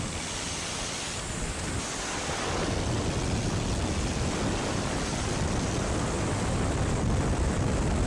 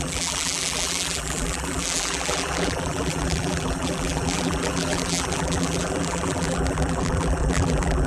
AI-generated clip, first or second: second